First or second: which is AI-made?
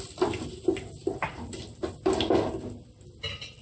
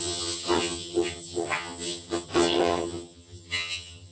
second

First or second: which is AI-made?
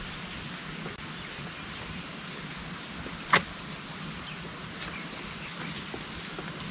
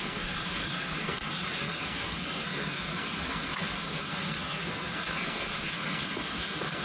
second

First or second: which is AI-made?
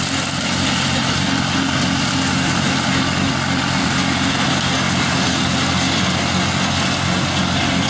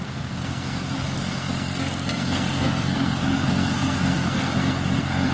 second